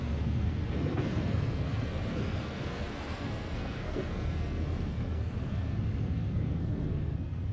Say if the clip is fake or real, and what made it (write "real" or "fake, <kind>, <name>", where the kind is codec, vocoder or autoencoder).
fake, codec, SNAC